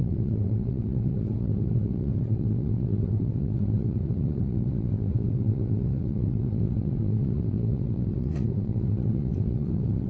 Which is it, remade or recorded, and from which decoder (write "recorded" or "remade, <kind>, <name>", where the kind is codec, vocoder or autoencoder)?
remade, vocoder, WaveNeXt